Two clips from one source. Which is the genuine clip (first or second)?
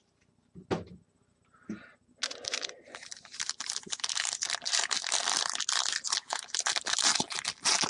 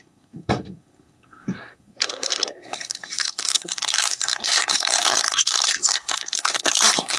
first